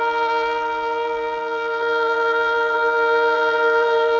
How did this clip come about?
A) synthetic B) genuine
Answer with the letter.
A